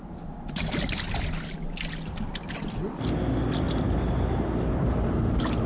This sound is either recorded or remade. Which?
recorded